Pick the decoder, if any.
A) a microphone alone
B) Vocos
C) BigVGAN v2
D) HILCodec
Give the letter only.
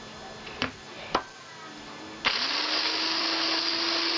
A